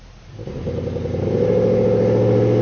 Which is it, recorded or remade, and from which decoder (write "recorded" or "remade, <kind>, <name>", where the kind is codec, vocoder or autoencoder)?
recorded